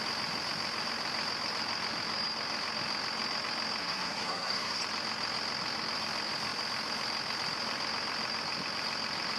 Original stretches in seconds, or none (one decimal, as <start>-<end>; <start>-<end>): 0.0-3.8; 4.8-9.4